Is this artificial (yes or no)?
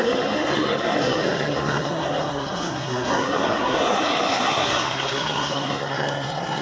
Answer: yes